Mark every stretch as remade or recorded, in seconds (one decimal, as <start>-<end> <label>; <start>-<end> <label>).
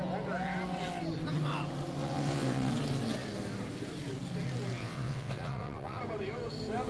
0.0-2.0 recorded; 2.0-2.7 remade; 2.7-4.8 recorded; 4.8-6.0 remade; 6.0-6.9 recorded